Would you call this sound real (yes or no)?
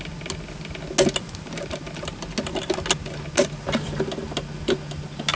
yes